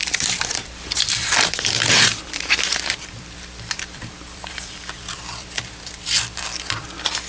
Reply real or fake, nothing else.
fake